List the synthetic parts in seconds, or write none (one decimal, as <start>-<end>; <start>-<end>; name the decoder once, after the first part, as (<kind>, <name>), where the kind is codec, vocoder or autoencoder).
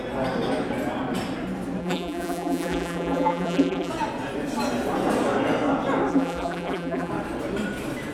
1.8-3.9 (vocoder, BigVGAN v2); 6.1-7.1